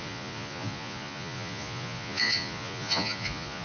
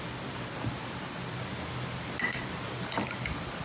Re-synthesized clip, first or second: first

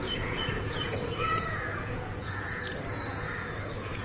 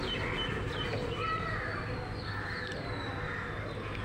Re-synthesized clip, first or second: first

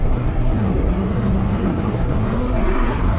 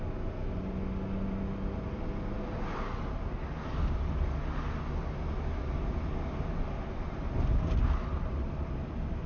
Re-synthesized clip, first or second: first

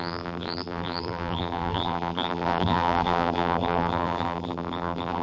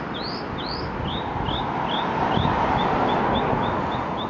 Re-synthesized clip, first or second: first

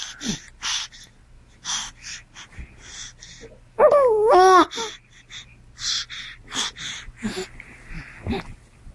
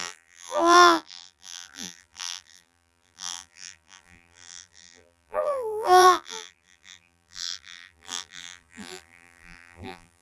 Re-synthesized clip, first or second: second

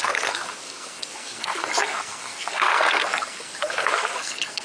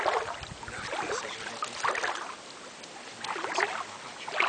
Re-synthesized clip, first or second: first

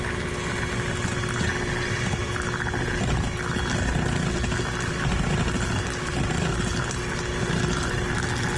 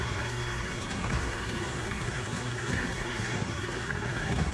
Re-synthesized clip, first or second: second